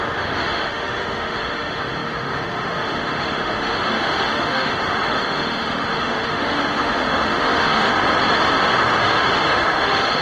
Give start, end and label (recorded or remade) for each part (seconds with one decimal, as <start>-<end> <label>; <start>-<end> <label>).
0.0-7.9 remade; 7.9-9.0 recorded; 9.0-10.2 remade